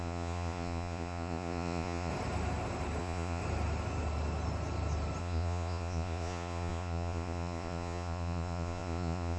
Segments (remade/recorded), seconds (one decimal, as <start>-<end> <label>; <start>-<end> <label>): 0.0-2.1 remade; 2.1-3.0 recorded; 3.0-3.4 remade; 3.4-5.2 recorded; 5.2-9.4 remade